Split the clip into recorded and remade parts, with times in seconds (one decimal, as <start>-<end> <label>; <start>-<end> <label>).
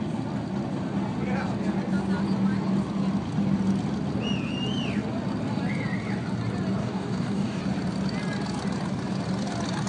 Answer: 0.0-6.8 recorded; 6.8-7.6 remade; 7.6-9.9 recorded